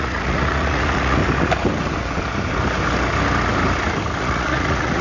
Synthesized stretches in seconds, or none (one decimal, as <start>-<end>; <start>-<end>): 0.0-1.2; 4.2-5.0

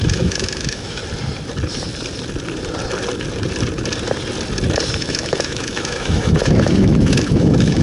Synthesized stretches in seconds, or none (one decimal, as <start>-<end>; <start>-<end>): 0.0-1.0; 4.9-7.8

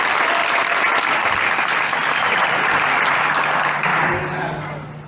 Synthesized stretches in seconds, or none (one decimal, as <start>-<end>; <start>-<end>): 0.4-3.2; 3.9-4.5